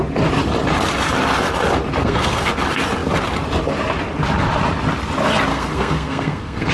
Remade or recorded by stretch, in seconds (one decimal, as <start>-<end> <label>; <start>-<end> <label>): 0.0-2.0 recorded; 2.0-2.5 remade; 2.5-5.5 recorded; 5.5-6.7 remade